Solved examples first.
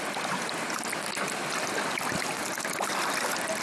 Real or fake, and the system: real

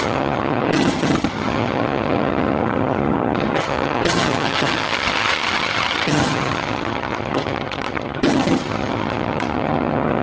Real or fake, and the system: fake, vocoder, HiFi-GAN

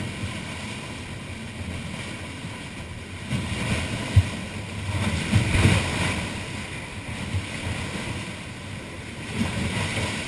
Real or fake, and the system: real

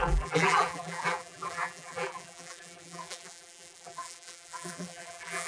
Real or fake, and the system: fake, vocoder, BigVGAN v2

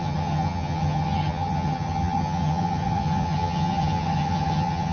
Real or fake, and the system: fake, vocoder, HiFi-GAN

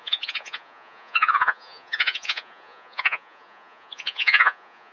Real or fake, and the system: fake, vocoder, Vocos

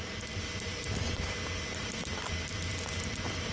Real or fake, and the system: real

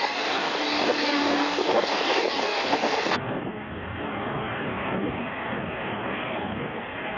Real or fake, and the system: fake, codec, DAC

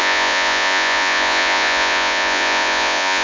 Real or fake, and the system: fake, vocoder, Vocos